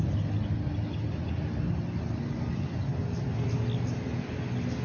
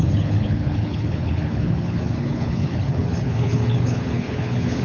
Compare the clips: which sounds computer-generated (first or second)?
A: second